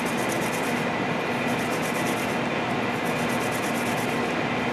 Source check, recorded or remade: recorded